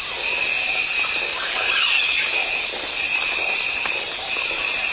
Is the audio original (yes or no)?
no